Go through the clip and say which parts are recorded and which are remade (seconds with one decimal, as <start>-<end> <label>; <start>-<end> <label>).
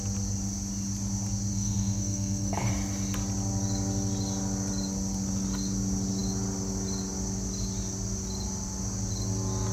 0.0-1.5 recorded; 1.5-2.7 remade; 2.7-9.7 recorded